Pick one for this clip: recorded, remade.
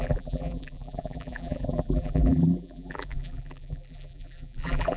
remade